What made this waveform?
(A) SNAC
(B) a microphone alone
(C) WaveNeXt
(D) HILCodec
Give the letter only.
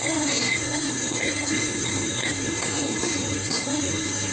A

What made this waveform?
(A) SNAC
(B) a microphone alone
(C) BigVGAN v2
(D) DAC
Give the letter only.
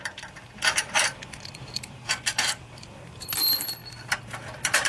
C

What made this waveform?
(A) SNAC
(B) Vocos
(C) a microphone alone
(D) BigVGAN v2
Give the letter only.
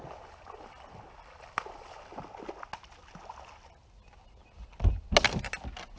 C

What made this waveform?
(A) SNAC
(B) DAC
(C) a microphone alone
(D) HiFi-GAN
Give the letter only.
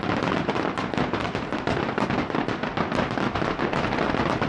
C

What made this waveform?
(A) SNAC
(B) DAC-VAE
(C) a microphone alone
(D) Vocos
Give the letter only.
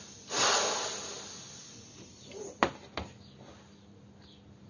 C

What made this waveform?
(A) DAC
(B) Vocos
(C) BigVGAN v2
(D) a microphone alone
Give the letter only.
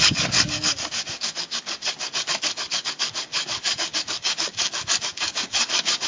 A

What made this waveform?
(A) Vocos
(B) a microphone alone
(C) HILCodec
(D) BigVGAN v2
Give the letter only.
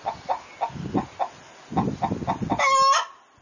B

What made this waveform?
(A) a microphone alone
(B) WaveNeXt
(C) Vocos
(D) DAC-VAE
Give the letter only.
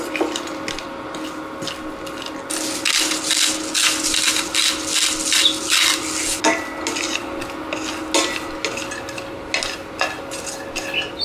A